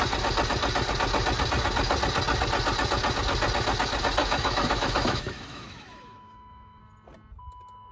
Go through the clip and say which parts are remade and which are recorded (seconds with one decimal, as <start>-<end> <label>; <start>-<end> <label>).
0.0-4.2 recorded; 4.2-6.8 remade; 6.8-7.9 recorded